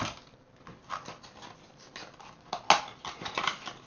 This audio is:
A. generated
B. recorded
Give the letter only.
B